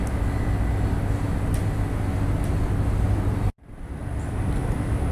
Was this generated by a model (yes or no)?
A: no